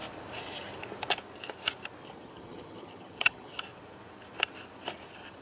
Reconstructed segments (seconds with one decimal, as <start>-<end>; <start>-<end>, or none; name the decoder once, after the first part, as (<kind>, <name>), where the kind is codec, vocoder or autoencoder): 2.0-3.6 (vocoder, HiFi-GAN)